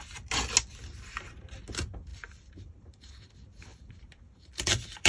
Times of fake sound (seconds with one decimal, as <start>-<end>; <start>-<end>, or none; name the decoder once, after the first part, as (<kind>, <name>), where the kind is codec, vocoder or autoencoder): 2.1-3.1 (vocoder, BigVGAN v2); 3.7-5.1